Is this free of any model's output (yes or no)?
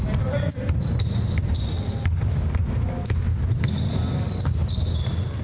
yes